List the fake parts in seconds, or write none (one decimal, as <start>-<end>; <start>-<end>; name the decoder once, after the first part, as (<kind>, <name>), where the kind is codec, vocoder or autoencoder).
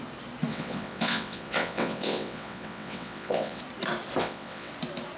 0.5-3.6 (vocoder, WaveNeXt); 4.2-4.7